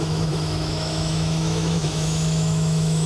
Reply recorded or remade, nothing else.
remade